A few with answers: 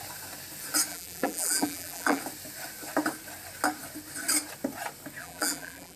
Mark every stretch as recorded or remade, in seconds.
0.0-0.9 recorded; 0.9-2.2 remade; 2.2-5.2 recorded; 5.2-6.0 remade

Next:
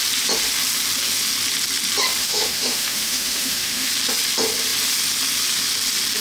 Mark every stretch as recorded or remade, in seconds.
0.0-2.2 recorded; 2.2-3.9 remade; 3.9-6.2 recorded